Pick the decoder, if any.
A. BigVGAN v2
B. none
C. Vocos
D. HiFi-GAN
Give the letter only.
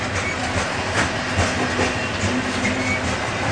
B